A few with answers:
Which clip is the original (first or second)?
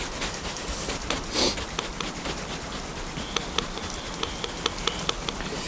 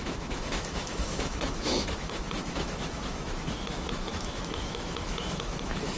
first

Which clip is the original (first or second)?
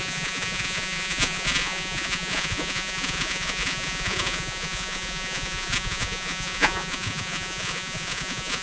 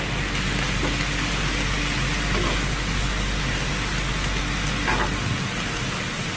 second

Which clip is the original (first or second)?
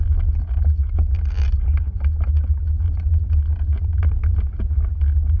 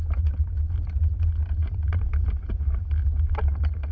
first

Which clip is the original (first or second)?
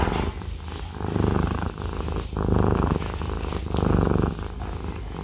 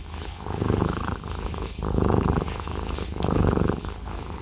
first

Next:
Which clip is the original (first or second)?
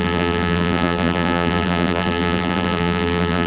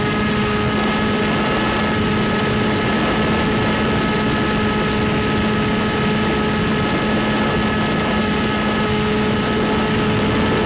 second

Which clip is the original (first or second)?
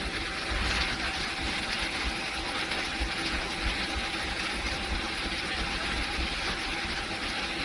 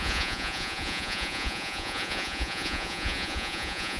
first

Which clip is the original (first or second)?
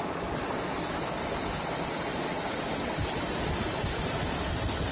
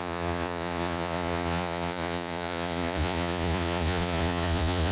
first